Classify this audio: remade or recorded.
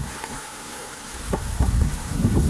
remade